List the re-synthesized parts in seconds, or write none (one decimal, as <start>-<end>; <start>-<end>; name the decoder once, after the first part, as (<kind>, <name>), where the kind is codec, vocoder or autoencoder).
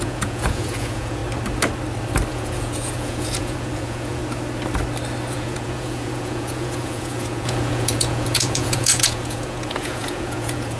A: 0.0-1.2 (vocoder, Vocos); 2.3-4.2; 5.3-10.8